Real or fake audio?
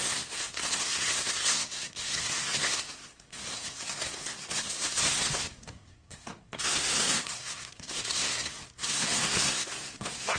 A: fake